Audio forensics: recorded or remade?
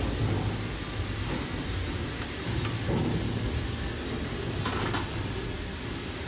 recorded